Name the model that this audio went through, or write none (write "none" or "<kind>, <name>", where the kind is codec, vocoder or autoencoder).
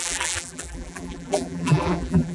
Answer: vocoder, BigVGAN v2